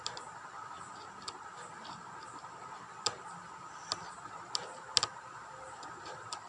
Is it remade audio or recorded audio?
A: recorded